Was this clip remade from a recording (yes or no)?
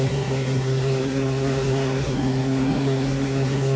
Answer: yes